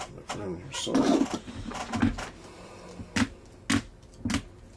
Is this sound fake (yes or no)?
no